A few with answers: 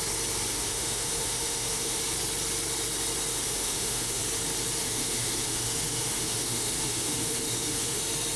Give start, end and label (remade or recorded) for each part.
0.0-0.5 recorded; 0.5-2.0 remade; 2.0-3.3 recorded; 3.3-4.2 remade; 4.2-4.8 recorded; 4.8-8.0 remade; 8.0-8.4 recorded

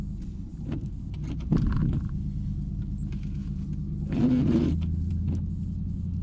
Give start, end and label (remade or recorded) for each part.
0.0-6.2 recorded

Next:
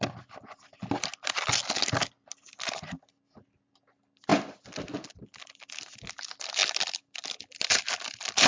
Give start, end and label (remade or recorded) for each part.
0.0-8.5 recorded

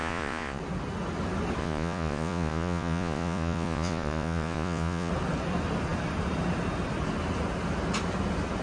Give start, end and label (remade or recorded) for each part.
0.0-0.6 remade; 0.6-1.6 recorded; 1.6-5.1 remade; 5.1-8.6 recorded